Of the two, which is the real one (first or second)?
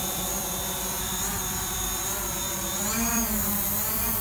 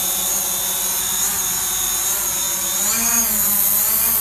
second